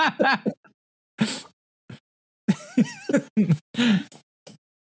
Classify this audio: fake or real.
real